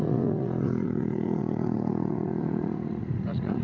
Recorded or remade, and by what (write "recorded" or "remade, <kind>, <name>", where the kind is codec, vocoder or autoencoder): remade, vocoder, Vocos